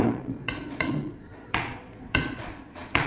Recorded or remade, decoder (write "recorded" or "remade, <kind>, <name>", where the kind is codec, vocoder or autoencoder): remade, vocoder, Vocos